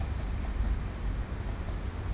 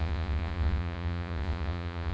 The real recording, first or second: first